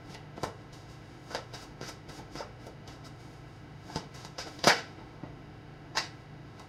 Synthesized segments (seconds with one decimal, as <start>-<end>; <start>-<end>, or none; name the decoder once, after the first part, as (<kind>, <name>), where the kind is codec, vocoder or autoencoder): 0.0-6.7 (autoencoder, DAC-VAE)